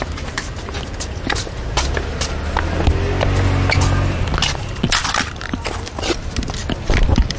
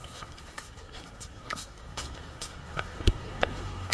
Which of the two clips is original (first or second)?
first